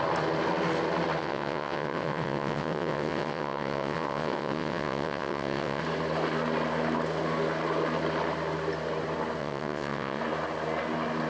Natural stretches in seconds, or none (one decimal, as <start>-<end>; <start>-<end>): 0.0-1.2; 5.8-9.4; 10.2-11.3